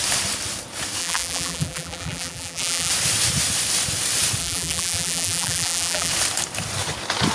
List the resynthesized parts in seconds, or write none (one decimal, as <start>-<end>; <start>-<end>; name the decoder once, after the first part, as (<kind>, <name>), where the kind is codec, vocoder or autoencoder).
1.0-2.9 (vocoder, BigVGAN v2); 4.4-6.1